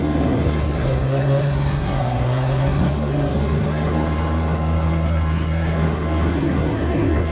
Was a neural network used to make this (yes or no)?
yes